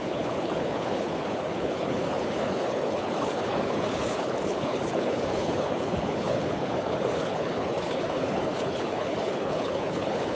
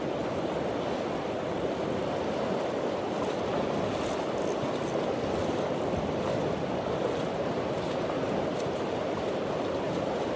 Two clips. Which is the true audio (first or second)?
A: second